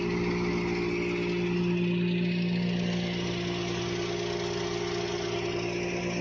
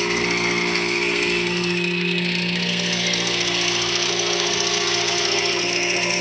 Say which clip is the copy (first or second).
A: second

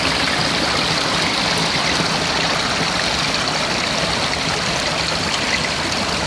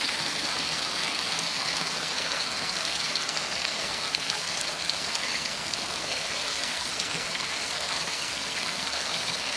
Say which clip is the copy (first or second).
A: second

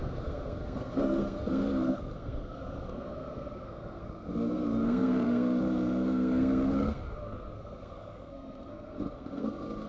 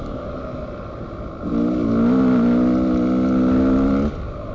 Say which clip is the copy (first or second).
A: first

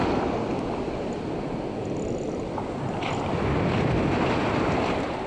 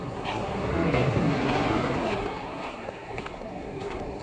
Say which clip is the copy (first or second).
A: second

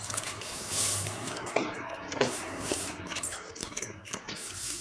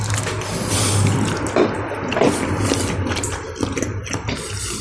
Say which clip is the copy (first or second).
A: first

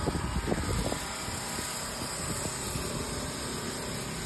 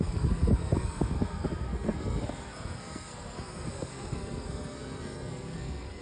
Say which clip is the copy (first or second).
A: second